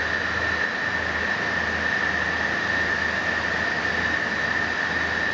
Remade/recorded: recorded